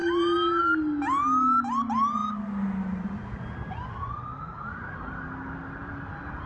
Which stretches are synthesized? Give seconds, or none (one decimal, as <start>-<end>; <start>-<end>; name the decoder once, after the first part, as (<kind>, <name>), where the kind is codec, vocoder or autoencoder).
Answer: 0.0-0.6 (vocoder, BigVGAN v2)